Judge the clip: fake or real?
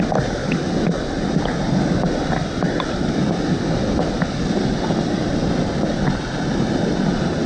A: real